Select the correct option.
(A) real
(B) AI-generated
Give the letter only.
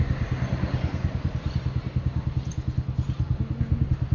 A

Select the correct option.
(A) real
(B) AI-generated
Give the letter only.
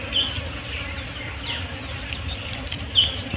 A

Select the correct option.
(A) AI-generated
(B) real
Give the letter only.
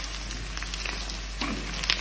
B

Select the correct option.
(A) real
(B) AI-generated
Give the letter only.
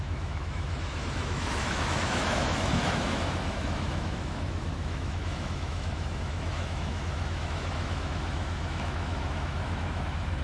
B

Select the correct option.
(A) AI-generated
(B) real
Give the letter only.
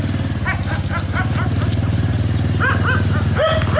B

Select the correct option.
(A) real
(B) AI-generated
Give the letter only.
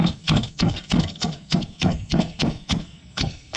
B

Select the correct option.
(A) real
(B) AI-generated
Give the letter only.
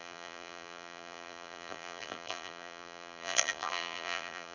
B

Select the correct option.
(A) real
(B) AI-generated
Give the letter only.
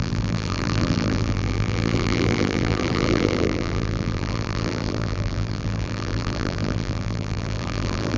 B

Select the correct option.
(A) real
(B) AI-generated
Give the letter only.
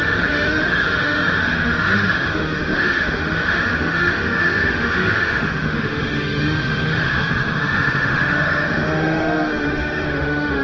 B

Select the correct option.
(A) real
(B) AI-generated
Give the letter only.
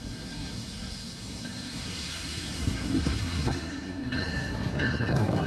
B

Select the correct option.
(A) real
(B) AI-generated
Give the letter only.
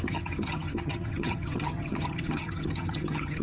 B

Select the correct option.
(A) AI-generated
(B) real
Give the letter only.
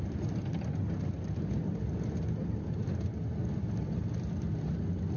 B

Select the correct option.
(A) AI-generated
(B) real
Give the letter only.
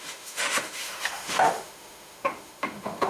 A